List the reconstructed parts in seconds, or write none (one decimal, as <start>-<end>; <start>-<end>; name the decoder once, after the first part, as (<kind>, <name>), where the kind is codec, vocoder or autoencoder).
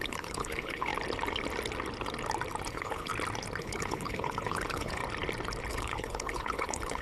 0.0-0.9 (codec, HILCodec); 2.7-3.1; 3.6-5.0; 5.7-7.0